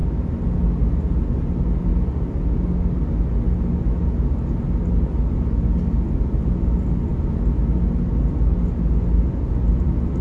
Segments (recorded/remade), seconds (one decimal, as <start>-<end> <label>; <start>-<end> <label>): 0.0-10.2 recorded